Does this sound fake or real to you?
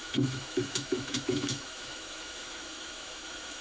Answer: fake